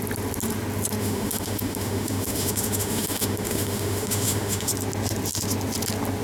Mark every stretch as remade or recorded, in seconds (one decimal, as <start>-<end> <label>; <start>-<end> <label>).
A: 0.0-1.0 recorded; 1.0-4.7 remade; 4.7-6.2 recorded